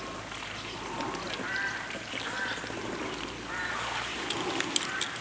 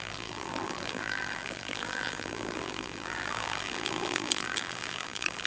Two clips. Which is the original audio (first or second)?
first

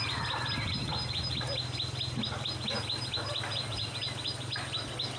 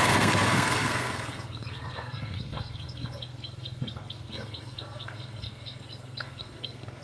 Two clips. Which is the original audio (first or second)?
first